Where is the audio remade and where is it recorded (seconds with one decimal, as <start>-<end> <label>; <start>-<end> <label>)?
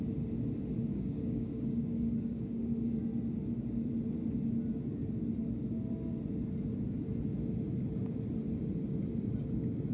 0.0-0.9 recorded; 0.9-3.0 remade; 3.0-9.9 recorded